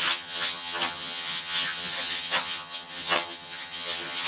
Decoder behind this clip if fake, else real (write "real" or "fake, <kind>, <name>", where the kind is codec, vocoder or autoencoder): fake, vocoder, HiFi-GAN